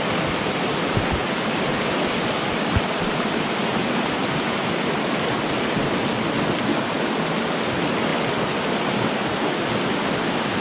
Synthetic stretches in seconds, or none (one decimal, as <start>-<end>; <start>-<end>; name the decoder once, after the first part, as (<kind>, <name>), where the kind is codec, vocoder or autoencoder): 1.2-4.3 (vocoder, BigVGAN v2)